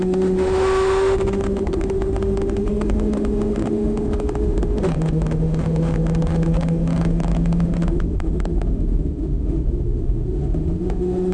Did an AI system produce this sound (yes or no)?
yes